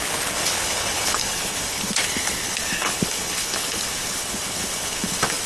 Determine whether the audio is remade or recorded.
remade